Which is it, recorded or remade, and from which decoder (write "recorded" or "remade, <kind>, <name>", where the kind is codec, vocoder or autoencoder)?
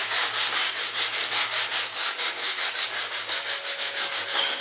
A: remade, codec, DAC